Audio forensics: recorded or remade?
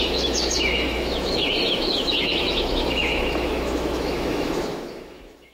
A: remade